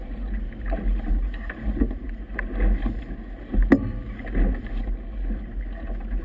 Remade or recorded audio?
recorded